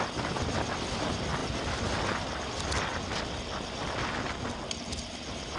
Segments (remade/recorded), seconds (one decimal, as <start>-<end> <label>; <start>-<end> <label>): 0.0-5.6 recorded